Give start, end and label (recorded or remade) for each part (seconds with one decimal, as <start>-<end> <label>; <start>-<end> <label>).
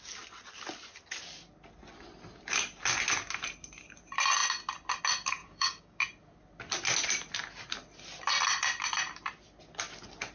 0.0-5.4 recorded; 5.4-6.0 remade; 6.0-10.3 recorded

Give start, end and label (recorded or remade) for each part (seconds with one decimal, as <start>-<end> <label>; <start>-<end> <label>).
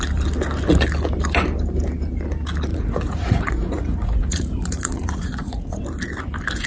0.0-2.7 recorded; 2.7-5.8 remade; 5.8-6.7 recorded